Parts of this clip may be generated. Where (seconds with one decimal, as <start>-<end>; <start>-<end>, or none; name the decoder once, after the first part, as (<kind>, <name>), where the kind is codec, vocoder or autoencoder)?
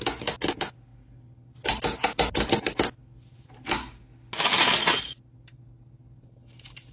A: none